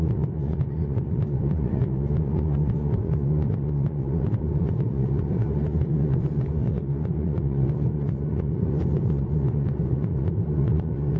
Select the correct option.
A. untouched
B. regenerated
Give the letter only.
B